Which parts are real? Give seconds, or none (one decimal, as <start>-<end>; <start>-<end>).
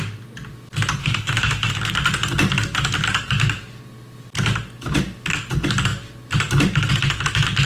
0.0-1.0; 1.7-7.6